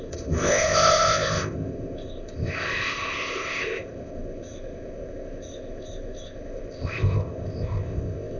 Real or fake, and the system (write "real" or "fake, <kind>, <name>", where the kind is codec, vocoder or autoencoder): fake, codec, ZipCodec